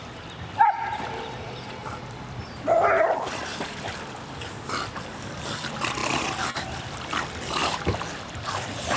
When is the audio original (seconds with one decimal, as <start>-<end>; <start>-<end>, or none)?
3.5-4.9

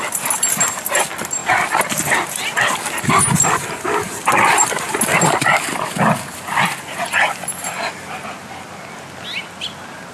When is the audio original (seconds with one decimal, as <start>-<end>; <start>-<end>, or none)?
0.0-10.1

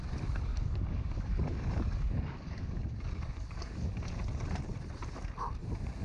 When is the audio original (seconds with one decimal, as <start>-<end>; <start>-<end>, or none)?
0.0-0.5; 4.0-6.0

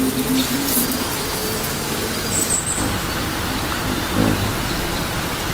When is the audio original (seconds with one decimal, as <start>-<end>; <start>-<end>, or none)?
0.0-5.5

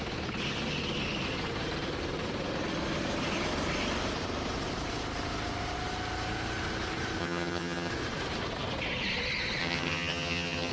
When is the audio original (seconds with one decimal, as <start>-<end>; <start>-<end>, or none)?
0.0-7.2; 7.9-9.6